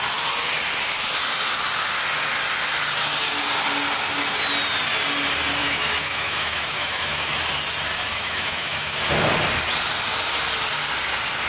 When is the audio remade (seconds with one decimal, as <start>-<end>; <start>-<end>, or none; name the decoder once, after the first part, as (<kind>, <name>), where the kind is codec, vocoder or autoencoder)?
5.6-7.4 (autoencoder, DAC-VAE); 8.1-9.0